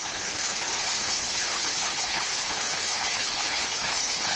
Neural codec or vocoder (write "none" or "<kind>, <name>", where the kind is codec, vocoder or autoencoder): codec, HILCodec